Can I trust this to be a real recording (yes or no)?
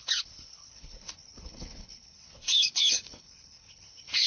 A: no